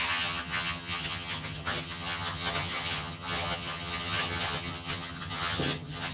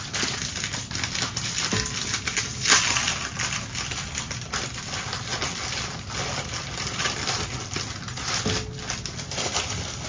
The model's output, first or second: first